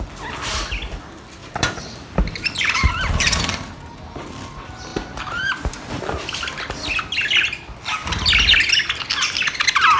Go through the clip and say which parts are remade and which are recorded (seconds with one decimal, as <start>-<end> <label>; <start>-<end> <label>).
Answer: 0.0-1.4 recorded; 1.4-3.4 remade; 3.4-4.9 recorded; 4.9-6.0 remade; 6.0-10.0 recorded